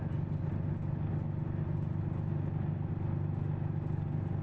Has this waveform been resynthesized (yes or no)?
no